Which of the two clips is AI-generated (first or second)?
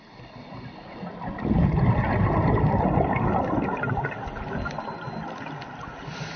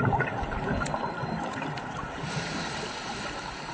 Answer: second